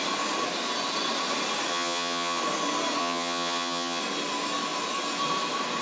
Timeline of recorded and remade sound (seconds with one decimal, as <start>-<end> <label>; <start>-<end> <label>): 0.0-1.7 recorded; 1.7-2.4 remade; 2.4-3.0 recorded; 3.0-4.0 remade; 4.0-5.8 recorded